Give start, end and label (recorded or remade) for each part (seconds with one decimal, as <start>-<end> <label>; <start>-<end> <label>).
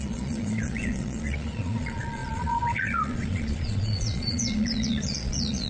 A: 0.0-5.7 remade